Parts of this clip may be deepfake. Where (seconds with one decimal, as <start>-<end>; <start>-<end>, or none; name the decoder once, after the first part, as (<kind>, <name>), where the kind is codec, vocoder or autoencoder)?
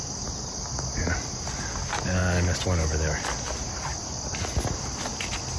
none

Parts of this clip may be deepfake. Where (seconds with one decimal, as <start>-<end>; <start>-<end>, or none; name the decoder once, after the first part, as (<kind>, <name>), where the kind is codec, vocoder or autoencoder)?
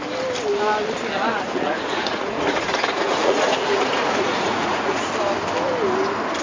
1.3-5.1 (vocoder, Vocos)